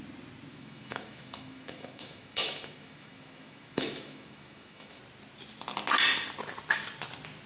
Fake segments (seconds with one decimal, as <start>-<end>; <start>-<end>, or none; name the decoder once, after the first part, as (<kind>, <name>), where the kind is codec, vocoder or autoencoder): 0.5-5.0 (autoencoder, DAC-VAE)